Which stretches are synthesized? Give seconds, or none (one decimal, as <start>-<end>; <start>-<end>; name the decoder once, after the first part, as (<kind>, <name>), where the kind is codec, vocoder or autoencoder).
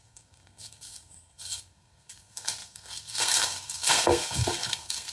0.0-5.1 (codec, SNAC)